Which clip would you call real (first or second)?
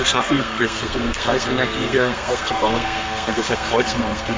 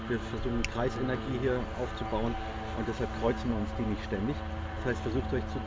second